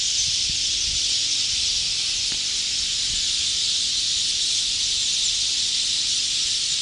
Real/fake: real